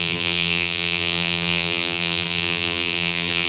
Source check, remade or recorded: remade